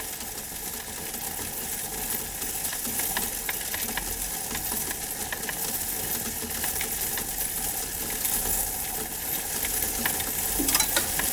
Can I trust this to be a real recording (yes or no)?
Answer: yes